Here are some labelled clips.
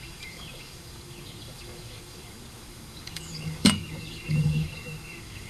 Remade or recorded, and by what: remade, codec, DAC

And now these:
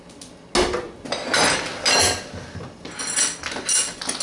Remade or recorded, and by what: recorded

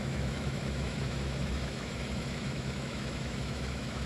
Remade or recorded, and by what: remade, autoencoder, DAC-VAE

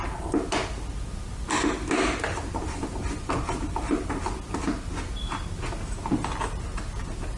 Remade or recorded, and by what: recorded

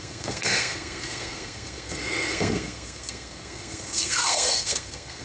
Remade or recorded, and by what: remade, codec, SNAC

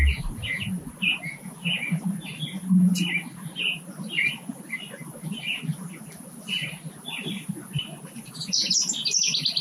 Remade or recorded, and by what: recorded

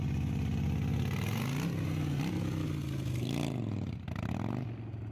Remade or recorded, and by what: recorded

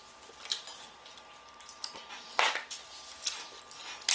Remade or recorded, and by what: recorded